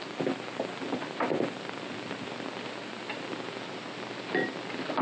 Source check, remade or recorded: recorded